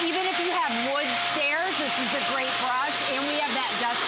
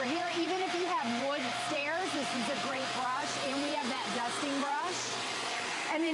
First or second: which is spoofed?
second